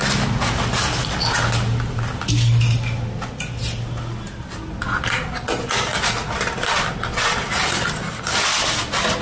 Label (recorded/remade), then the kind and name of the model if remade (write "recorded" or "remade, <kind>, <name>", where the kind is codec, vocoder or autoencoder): recorded